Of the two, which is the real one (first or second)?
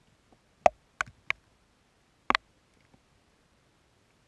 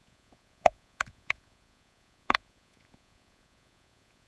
first